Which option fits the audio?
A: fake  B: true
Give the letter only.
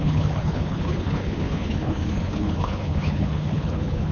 A